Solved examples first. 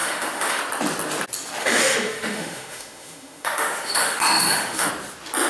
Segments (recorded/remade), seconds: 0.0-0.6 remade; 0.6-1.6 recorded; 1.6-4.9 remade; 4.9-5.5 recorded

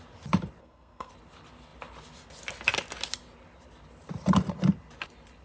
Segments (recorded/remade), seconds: 0.0-0.6 recorded; 0.6-1.1 remade; 1.1-5.4 recorded

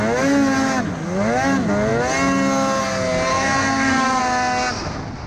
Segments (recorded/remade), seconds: 0.0-3.3 recorded; 3.3-4.2 remade; 4.2-5.3 recorded

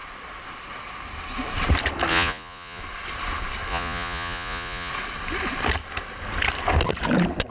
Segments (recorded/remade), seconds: 0.0-2.1 recorded; 2.1-2.8 remade; 2.8-3.7 recorded; 3.7-4.9 remade; 4.9-7.5 recorded

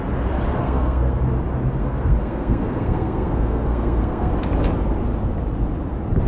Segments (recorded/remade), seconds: 0.0-0.6 recorded; 0.6-1.2 remade; 1.2-1.8 recorded; 1.8-4.3 remade; 4.3-6.3 recorded

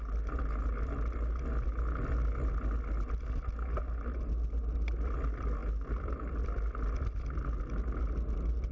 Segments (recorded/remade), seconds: 0.0-8.7 recorded

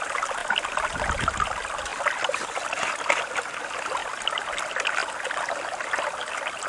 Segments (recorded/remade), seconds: 0.0-6.7 recorded